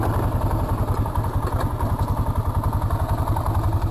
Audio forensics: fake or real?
real